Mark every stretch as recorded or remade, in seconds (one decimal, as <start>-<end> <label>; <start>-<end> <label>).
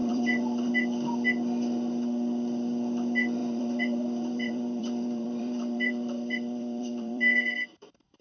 0.0-0.7 remade; 0.7-3.4 recorded; 3.4-8.2 remade